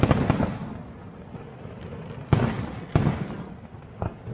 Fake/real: real